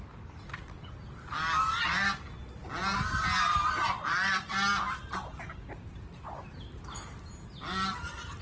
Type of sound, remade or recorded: recorded